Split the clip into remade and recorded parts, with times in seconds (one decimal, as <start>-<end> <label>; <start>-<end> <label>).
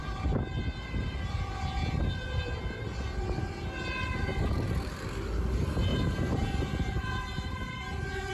0.0-4.3 recorded; 4.3-5.0 remade; 5.0-5.9 recorded; 5.9-8.3 remade